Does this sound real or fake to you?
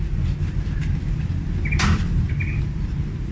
real